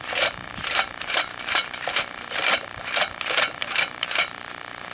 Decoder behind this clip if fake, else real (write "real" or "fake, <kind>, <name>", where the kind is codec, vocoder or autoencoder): fake, vocoder, BigVGAN v2